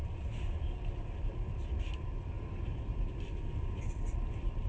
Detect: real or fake fake